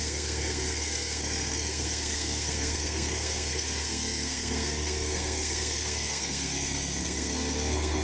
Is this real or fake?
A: fake